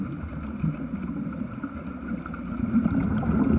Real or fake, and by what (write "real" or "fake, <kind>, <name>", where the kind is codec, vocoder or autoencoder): real